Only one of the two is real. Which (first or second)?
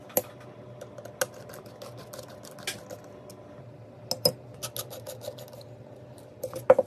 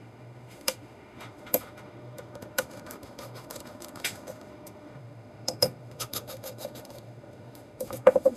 first